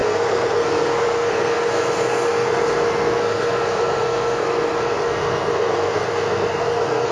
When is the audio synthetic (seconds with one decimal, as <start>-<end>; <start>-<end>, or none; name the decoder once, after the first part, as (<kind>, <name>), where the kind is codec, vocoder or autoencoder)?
0.0-7.1 (codec, SNAC)